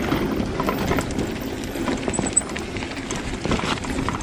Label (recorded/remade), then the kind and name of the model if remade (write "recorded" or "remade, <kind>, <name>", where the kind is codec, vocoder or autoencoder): recorded